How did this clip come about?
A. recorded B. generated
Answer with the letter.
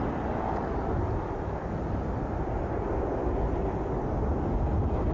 A